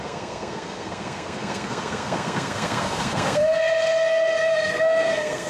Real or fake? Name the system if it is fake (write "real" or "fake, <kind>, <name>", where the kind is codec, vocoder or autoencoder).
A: fake, codec, SNAC